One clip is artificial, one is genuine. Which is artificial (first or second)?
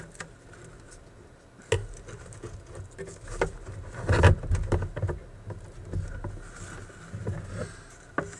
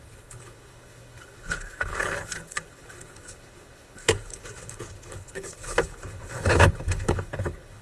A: second